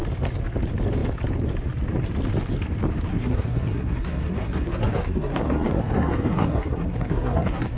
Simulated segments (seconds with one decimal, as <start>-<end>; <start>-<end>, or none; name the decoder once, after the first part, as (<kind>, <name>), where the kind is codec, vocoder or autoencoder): 3.1-7.8 (codec, SNAC)